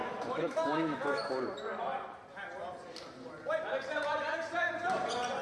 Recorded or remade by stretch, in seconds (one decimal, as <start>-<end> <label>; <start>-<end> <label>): 0.0-1.0 remade; 1.0-5.4 recorded